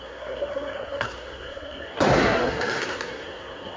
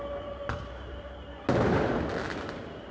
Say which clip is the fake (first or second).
first